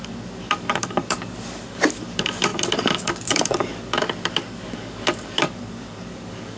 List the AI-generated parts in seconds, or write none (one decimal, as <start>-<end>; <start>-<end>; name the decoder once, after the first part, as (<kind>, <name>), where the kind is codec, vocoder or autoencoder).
0.0-6.6 (codec, DAC)